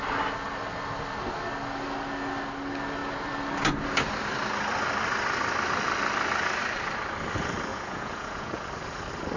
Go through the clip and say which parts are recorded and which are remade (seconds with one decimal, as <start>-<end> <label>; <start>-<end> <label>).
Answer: 0.0-7.7 recorded; 7.7-8.7 remade; 8.7-9.4 recorded